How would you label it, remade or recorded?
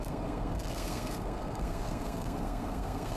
remade